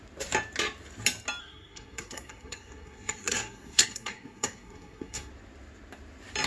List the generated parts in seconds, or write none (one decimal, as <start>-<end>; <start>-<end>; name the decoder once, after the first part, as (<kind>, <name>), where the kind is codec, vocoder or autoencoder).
1.4-5.3 (codec, SNAC)